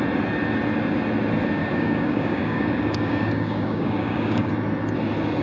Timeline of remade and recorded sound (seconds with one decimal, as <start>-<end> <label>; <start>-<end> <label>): 0.0-1.6 recorded; 1.6-4.5 remade; 4.5-5.4 recorded